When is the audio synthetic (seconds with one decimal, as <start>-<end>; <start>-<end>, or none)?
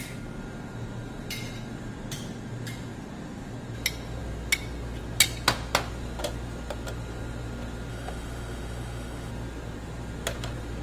7.9-9.3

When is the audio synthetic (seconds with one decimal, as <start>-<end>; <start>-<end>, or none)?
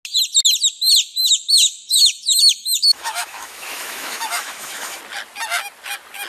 1.2-5.0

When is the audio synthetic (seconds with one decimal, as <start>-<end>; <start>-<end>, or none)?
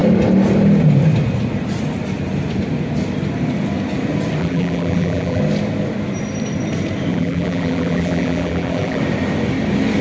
4.4-5.4; 7.1-9.0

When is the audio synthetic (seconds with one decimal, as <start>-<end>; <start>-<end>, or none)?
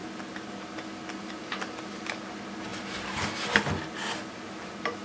none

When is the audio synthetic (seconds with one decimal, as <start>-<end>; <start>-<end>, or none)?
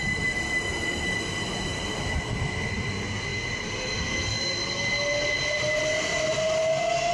none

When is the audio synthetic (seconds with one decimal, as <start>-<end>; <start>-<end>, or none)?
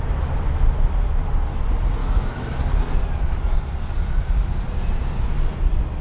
2.0-2.6